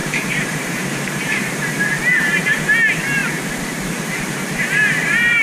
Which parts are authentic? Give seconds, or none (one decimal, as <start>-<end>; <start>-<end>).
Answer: 3.2-3.9